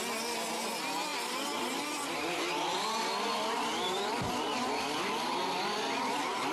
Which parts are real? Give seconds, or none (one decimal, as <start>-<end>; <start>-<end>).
0.0-6.5